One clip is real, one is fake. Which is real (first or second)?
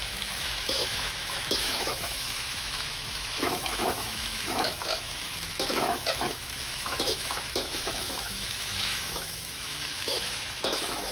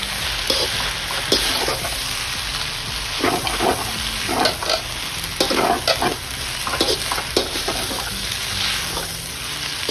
second